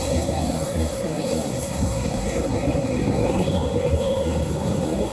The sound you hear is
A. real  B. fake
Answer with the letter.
B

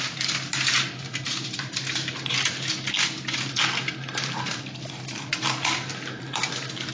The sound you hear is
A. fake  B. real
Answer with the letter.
B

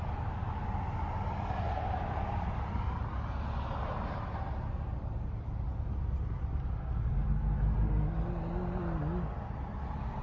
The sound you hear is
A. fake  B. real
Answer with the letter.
B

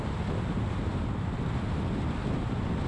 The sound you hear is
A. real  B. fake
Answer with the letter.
A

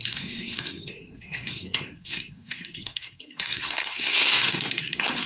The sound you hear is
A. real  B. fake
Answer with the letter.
B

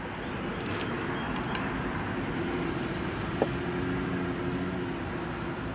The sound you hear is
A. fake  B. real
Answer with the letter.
B